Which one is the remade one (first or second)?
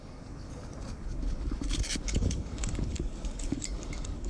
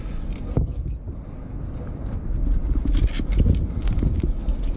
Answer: first